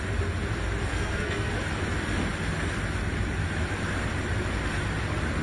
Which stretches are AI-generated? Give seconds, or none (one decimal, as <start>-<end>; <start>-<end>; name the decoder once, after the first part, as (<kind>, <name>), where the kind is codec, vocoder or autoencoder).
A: 0.9-1.5 (codec, SNAC)